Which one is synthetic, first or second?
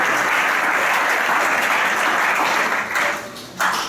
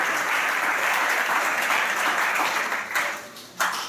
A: second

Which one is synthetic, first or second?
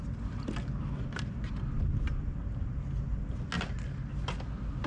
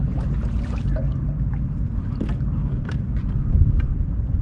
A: second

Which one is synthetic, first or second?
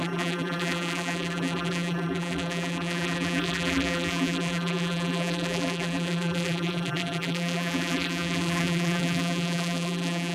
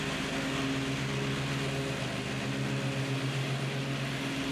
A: first